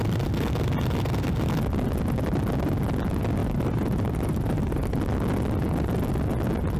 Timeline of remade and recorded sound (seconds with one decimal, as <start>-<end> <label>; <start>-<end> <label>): 0.0-3.4 recorded; 3.4-5.0 remade; 5.0-6.8 recorded